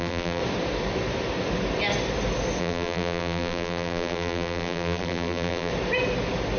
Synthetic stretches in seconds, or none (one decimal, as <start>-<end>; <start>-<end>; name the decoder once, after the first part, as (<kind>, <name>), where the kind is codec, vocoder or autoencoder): 0.0-0.4 (vocoder, BigVGAN v2); 2.6-5.7